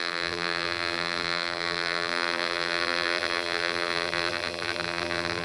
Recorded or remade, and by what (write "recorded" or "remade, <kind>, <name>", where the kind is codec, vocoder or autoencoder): remade, vocoder, BigVGAN v2